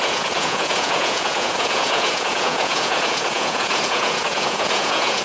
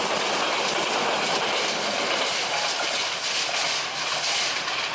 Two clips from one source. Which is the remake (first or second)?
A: first